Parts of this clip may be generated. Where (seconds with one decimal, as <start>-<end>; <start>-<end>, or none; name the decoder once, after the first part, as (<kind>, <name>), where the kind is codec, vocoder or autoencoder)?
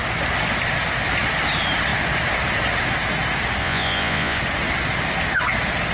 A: 3.6-4.4 (vocoder, Vocos)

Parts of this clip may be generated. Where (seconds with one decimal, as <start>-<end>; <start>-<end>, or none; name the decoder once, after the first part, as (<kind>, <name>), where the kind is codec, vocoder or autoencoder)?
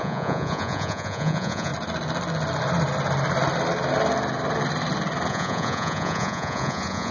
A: 0.0-1.7 (vocoder, Vocos); 5.3-7.1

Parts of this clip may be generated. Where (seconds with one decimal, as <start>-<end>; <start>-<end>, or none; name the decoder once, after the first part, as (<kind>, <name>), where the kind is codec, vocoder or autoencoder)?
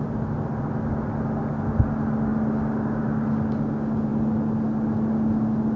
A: none